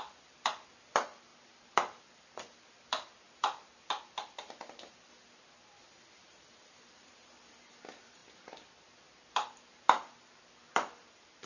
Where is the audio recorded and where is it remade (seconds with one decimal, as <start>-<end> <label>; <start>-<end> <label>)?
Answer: 0.0-1.3 remade; 1.3-2.0 recorded; 2.0-11.5 remade